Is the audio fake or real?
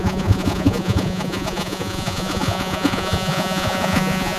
fake